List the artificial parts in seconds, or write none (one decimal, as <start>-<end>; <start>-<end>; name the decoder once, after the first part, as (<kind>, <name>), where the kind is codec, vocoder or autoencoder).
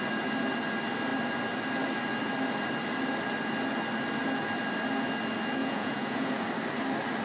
5.6-6.3 (vocoder, Vocos)